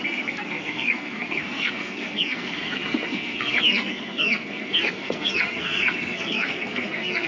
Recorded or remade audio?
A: remade